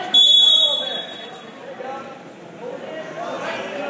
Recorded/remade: recorded